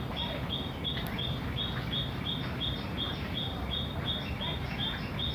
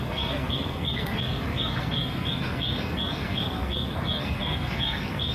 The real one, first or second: first